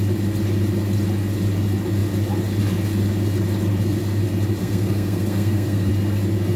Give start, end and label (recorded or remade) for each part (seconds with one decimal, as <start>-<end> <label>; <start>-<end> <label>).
0.0-4.6 recorded; 4.6-5.9 remade; 5.9-6.6 recorded